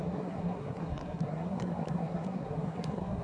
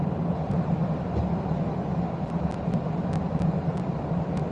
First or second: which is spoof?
first